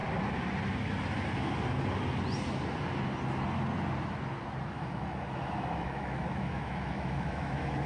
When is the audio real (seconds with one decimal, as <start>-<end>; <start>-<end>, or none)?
0.0-4.7